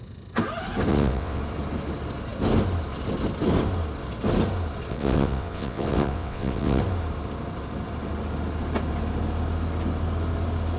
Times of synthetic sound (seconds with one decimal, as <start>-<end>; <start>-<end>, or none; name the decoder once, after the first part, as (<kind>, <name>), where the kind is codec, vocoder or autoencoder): 0.9-1.4 (vocoder, WaveNeXt); 4.9-6.8